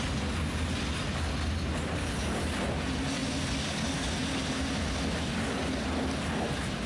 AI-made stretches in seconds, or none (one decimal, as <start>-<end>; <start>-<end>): none